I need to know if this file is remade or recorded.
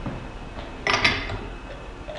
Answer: recorded